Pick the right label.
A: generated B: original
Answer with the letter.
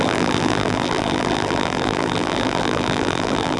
A